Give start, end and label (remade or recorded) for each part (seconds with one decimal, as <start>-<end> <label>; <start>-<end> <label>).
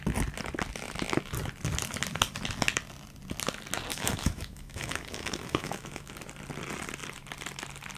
0.0-3.9 recorded; 3.9-6.1 remade; 6.1-8.0 recorded